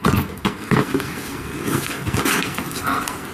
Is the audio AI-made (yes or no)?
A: yes